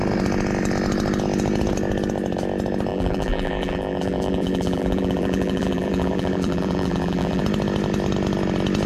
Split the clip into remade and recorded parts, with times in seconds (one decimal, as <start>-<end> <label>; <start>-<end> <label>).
0.0-2.9 recorded; 2.9-7.4 remade; 7.4-8.9 recorded

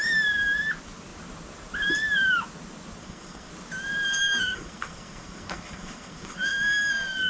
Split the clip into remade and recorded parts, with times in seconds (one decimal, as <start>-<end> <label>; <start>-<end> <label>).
0.0-3.0 recorded; 3.0-3.5 remade; 3.5-4.1 recorded; 4.1-7.3 remade

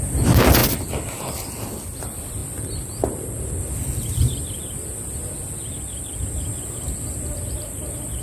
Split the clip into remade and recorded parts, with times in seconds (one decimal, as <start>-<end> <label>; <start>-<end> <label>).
0.0-8.2 recorded

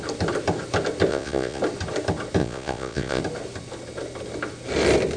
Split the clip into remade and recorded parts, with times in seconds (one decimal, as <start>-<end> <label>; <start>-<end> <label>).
0.0-1.1 recorded; 1.1-1.6 remade; 1.6-2.4 recorded; 2.4-3.2 remade; 3.2-5.2 recorded

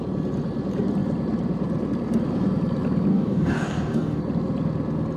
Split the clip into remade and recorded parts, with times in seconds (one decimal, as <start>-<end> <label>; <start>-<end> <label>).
0.0-3.1 recorded; 3.1-4.2 remade; 4.2-5.2 recorded

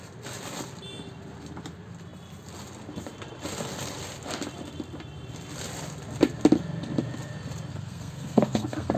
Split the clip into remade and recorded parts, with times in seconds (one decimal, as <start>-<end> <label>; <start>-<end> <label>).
0.0-7.7 recorded; 7.7-9.0 remade

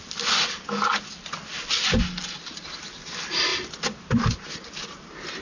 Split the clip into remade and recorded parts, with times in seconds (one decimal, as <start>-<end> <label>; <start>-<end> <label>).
0.0-3.5 recorded; 3.5-5.4 remade

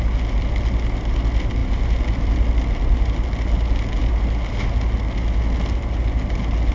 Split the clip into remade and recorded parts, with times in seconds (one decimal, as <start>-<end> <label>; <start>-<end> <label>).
0.0-6.7 recorded